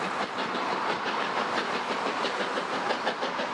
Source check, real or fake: fake